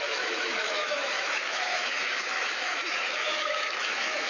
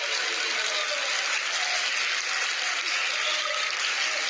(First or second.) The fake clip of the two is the first